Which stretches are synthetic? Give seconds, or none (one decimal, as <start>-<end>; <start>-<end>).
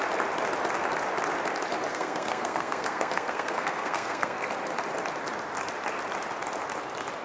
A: 1.9-4.5